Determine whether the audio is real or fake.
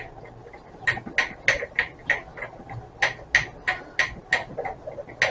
real